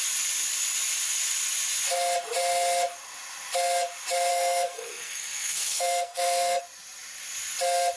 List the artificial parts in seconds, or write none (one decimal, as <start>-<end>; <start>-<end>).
4.3-6.6